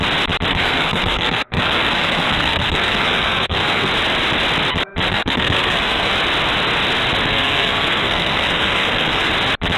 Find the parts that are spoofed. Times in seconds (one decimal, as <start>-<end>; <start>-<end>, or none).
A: 0.5-3.9; 5.1-6.1; 7.3-9.3